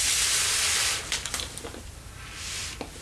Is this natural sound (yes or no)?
yes